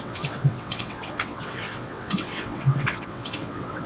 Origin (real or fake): fake